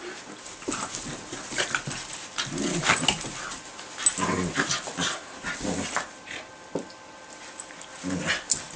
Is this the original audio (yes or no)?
yes